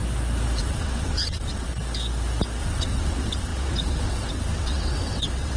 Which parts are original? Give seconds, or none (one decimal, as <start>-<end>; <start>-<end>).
0.0-0.6; 1.7-2.6